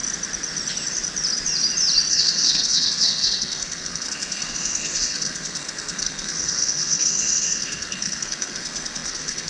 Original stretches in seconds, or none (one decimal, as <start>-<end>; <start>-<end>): 0.0-2.1